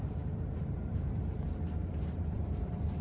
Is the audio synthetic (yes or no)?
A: yes